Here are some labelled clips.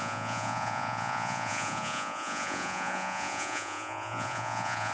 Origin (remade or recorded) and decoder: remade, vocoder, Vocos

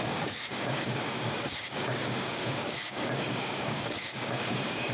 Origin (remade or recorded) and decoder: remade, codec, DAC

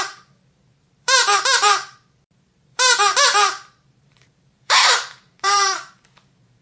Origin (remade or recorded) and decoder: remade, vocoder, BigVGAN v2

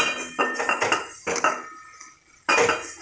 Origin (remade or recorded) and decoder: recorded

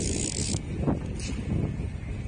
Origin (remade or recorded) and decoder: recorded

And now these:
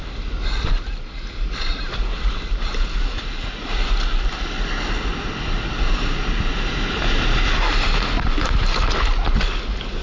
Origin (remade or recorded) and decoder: recorded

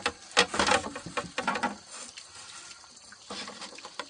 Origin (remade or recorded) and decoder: recorded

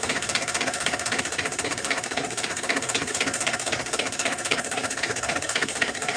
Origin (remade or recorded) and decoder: remade, codec, SNAC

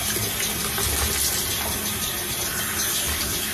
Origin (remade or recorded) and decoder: recorded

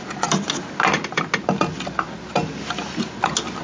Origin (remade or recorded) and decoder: recorded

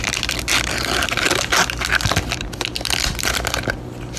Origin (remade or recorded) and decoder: recorded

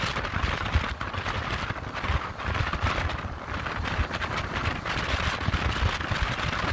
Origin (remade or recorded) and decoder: recorded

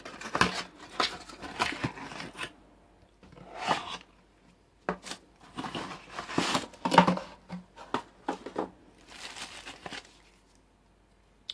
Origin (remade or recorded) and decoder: recorded